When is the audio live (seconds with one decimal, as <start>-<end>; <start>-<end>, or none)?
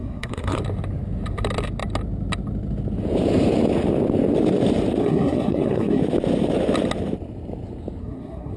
0.6-5.0; 6.0-8.0